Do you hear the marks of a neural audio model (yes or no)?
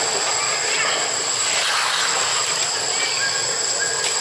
no